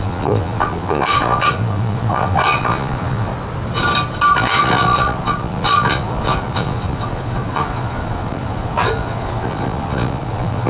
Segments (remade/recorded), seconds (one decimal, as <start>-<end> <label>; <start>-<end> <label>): 0.0-3.3 remade; 3.3-4.3 recorded; 4.3-10.7 remade